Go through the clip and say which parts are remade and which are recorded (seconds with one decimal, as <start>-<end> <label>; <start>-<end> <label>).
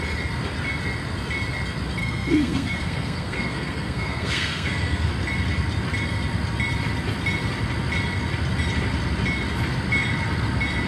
0.0-2.0 recorded; 2.0-5.1 remade; 5.1-10.9 recorded